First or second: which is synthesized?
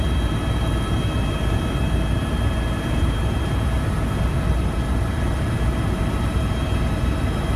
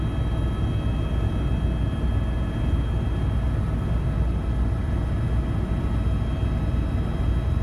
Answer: first